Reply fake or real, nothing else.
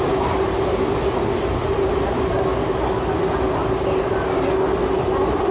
real